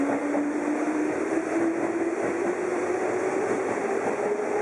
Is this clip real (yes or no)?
yes